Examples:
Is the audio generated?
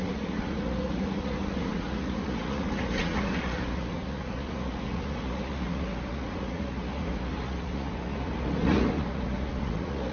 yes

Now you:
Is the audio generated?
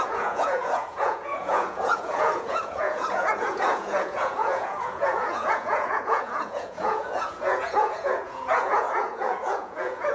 yes